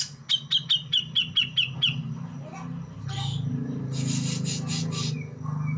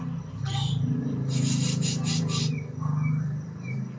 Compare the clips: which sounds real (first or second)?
first